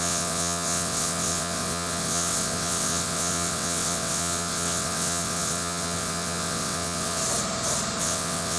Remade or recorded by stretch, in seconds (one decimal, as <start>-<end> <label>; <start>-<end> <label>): 0.0-7.2 remade; 7.2-8.0 recorded; 8.0-8.6 remade